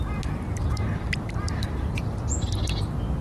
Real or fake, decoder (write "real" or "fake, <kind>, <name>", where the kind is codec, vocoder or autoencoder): real